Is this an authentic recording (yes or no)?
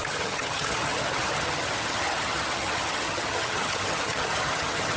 no